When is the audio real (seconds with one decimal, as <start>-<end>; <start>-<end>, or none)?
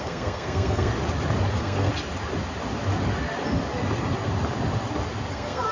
0.9-1.5; 1.9-5.3